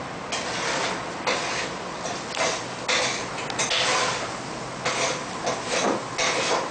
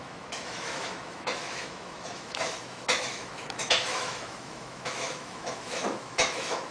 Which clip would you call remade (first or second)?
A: second